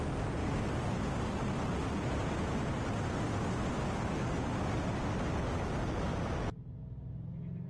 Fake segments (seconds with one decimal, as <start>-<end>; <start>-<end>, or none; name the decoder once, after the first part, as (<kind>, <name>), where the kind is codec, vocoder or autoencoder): 0.4-5.0 (vocoder, BigVGAN v2); 6.1-6.8